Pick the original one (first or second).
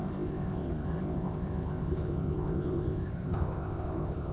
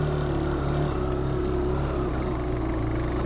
second